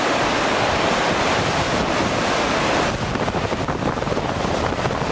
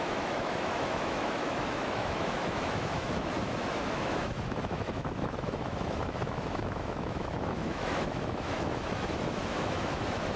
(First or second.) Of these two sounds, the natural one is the first